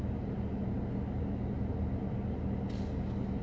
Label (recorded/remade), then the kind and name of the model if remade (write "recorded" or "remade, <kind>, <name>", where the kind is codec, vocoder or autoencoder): recorded